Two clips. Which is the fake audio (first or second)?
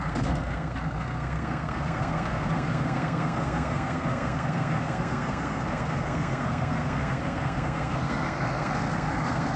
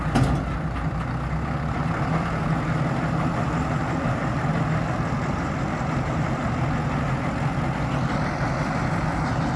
first